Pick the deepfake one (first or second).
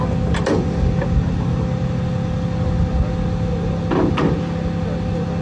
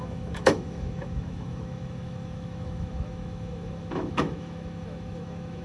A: second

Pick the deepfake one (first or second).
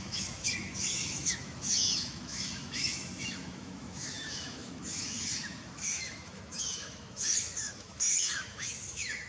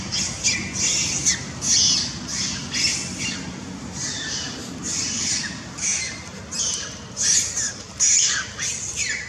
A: first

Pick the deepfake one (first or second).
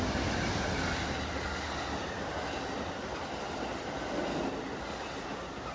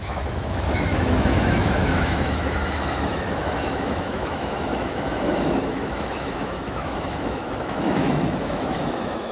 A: second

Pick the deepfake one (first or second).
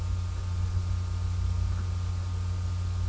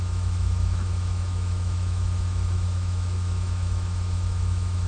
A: second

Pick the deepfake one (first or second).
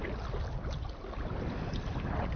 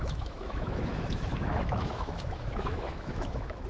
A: second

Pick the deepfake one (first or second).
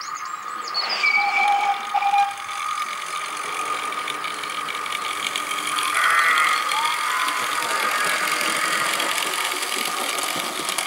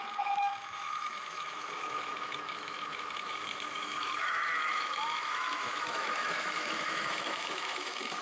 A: second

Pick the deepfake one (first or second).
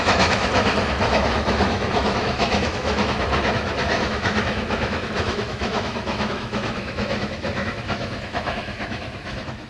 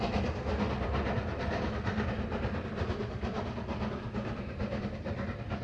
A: first